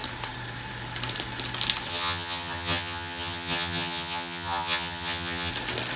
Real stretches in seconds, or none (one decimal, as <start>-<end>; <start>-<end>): 0.0-1.9; 5.5-6.0